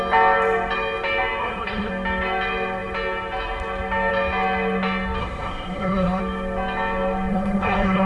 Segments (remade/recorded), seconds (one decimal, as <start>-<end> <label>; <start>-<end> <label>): 0.0-1.4 recorded; 1.4-1.9 remade; 1.9-5.2 recorded; 5.2-6.2 remade; 6.2-7.3 recorded; 7.3-8.1 remade